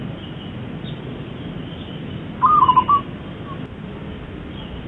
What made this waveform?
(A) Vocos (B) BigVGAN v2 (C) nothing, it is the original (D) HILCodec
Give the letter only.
C